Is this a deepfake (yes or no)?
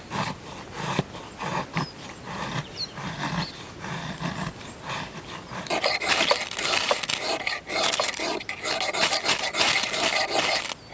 no